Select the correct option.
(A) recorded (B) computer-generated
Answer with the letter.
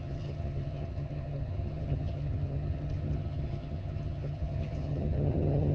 B